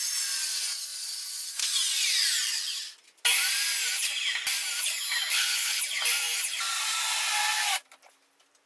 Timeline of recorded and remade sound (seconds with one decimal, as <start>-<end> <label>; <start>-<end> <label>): 0.0-5.3 recorded; 5.3-5.8 remade; 5.8-8.7 recorded